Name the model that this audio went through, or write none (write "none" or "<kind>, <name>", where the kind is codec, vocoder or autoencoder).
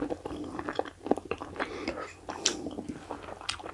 none